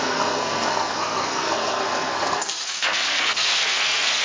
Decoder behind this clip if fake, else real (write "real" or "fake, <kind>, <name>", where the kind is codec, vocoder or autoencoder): fake, codec, SNAC